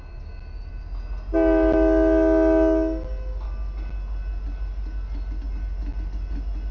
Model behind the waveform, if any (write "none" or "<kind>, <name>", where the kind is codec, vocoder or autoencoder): none